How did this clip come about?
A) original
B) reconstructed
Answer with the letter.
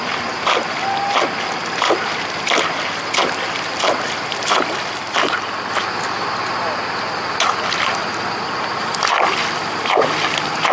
A